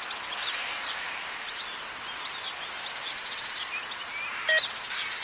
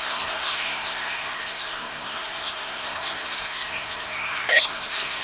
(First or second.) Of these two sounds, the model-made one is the second